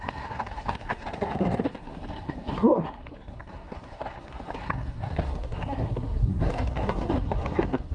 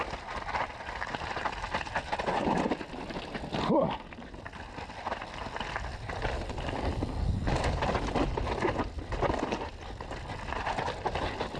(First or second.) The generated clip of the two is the first